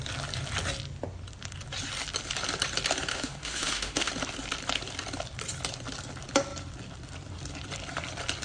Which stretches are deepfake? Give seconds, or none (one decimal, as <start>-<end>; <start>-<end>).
3.1-4.1